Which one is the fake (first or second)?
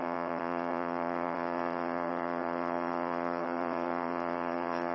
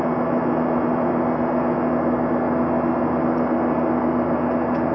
first